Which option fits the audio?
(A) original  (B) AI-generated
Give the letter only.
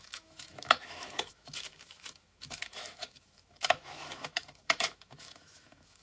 B